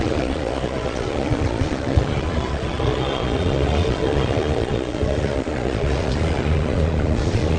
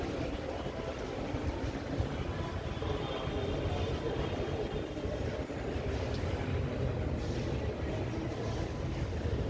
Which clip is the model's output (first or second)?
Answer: first